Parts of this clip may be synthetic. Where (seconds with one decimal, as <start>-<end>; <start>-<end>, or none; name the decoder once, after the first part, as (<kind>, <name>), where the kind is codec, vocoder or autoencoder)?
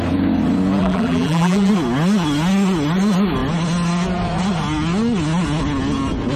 0.8-1.7 (vocoder, BigVGAN v2)